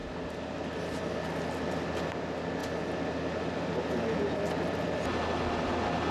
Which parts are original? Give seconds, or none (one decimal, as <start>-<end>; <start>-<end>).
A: 0.0-6.1